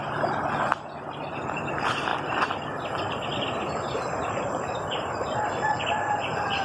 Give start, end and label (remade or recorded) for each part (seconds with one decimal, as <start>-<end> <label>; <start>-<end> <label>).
0.0-1.4 recorded; 1.4-2.1 remade; 2.1-4.3 recorded; 4.3-6.6 remade